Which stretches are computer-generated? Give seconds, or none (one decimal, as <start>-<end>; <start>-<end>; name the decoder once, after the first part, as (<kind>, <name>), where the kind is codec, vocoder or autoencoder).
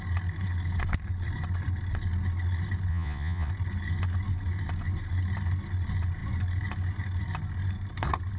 2.9-3.5 (vocoder, Vocos)